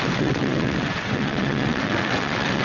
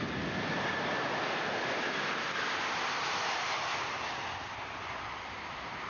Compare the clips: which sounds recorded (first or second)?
second